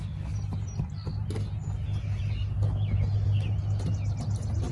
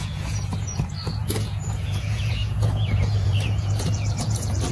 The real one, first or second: first